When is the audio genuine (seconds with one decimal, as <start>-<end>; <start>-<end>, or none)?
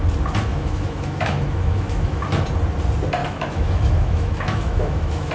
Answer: 0.0-0.5; 2.2-3.2